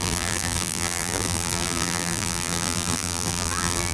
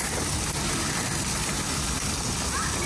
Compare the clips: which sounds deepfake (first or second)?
first